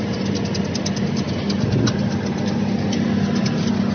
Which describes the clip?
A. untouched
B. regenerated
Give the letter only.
A